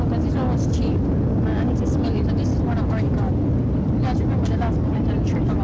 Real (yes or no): yes